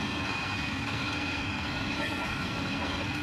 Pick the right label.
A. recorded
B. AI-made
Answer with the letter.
B